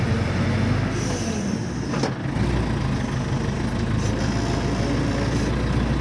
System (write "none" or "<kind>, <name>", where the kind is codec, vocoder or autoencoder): none